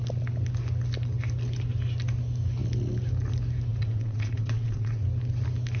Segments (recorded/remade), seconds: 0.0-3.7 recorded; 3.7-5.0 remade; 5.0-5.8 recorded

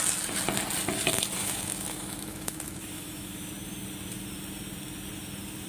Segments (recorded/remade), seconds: 0.0-1.4 recorded; 1.4-3.5 remade; 3.5-5.7 recorded